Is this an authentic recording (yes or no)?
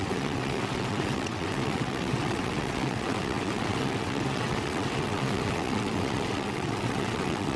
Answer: no